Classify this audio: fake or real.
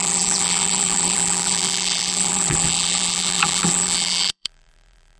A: fake